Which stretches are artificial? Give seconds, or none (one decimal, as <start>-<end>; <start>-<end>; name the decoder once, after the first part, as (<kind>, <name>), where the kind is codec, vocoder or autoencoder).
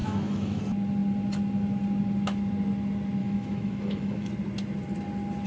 0.0-0.6 (autoencoder, DAC-VAE); 3.2-4.3